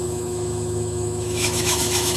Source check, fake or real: fake